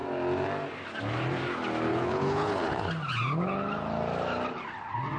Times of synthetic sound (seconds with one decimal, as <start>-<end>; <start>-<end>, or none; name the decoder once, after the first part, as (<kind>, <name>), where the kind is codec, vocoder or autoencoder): 1.9-2.9 (codec, HILCodec)